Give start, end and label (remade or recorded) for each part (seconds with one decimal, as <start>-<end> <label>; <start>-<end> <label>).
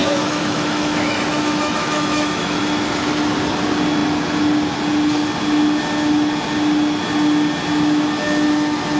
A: 0.0-2.6 remade; 2.6-9.0 recorded